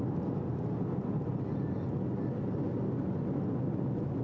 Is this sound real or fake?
real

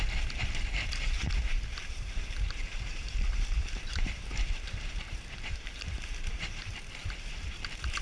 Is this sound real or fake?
fake